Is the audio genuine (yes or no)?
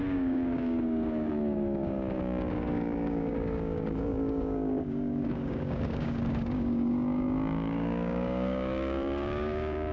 no